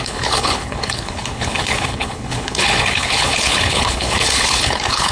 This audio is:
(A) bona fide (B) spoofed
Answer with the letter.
B